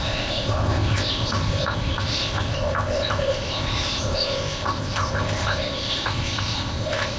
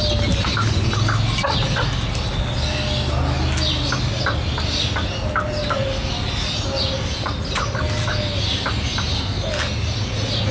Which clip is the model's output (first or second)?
first